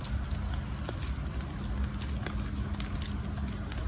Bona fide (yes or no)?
yes